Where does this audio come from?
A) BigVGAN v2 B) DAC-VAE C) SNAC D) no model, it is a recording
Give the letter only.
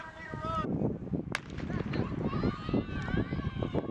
D